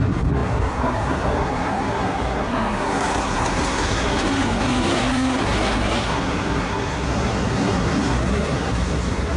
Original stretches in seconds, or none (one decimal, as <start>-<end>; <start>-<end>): none